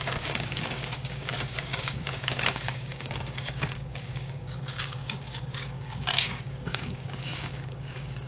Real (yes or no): no